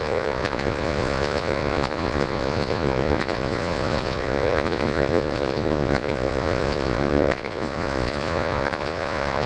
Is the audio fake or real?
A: fake